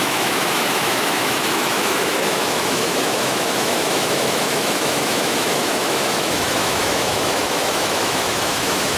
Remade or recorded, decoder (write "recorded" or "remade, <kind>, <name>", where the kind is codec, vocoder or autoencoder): remade, autoencoder, DAC-VAE